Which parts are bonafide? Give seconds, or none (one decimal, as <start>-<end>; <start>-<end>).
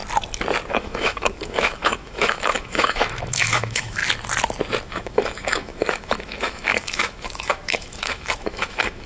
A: 0.0-0.7; 4.0-4.8